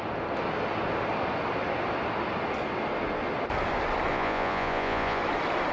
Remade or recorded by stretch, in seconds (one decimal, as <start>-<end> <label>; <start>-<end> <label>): 0.0-4.1 recorded; 4.1-5.2 remade; 5.2-5.7 recorded